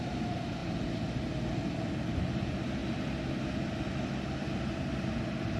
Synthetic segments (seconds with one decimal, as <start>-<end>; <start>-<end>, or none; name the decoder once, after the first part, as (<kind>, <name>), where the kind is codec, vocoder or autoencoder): none